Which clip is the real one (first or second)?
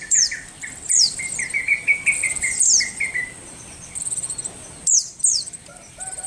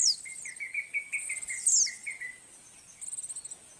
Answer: second